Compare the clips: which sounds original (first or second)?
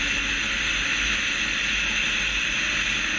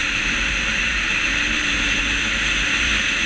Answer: first